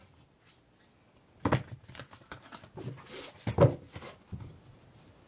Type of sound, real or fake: real